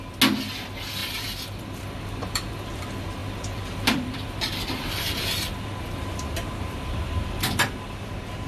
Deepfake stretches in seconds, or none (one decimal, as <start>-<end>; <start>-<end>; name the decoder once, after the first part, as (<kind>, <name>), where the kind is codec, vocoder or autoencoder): 1.0-2.8 (vocoder, BigVGAN v2); 3.2-8.1